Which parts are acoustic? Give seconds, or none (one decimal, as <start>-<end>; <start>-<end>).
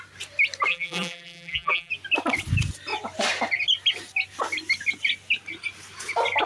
0.0-0.7; 1.9-6.5